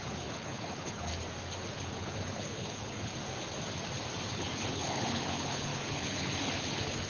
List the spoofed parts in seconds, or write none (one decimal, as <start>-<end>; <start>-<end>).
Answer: 0.0-1.1; 1.7-3.1; 4.3-7.1